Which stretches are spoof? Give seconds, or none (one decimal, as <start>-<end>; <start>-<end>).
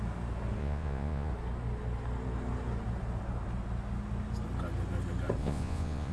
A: 0.6-1.3; 5.4-6.1